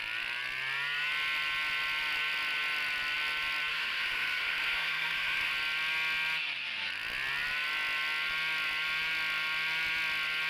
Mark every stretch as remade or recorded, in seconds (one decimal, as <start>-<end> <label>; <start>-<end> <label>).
0.0-3.7 recorded; 3.7-5.5 remade; 5.5-10.5 recorded